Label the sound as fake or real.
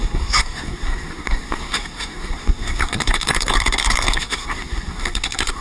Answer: fake